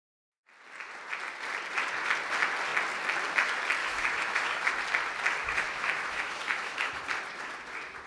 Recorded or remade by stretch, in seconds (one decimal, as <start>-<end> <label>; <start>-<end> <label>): 0.0-3.8 recorded; 3.8-4.7 remade; 4.7-5.4 recorded; 5.4-6.9 remade; 6.9-8.1 recorded